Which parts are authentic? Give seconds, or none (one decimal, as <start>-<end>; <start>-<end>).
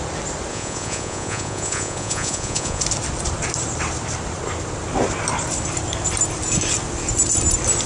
0.0-0.5; 2.8-7.9